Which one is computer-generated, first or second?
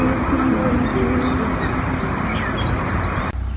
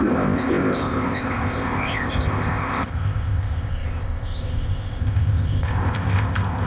second